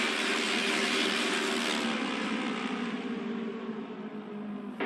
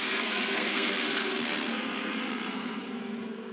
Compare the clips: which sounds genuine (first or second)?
first